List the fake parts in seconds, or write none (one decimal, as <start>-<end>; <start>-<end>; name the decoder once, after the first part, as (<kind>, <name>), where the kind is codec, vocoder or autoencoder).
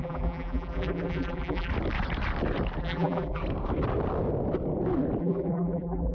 0.0-1.7 (vocoder, BigVGAN v2); 2.8-3.4; 5.2-6.1